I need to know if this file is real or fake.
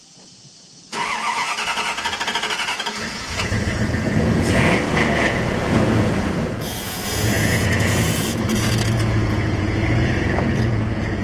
fake